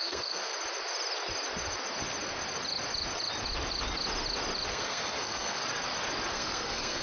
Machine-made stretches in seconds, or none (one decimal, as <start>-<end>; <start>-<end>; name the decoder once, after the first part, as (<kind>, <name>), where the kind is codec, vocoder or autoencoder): 0.0-0.5 (codec, SNAC); 4.7-5.6; 6.3-7.0